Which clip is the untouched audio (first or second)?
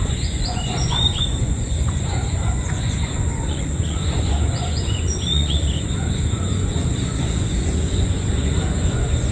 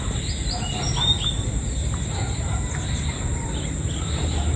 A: second